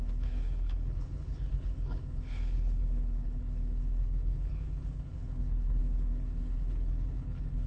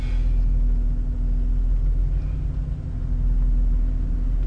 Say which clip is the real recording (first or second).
second